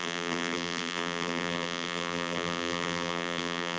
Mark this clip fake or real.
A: fake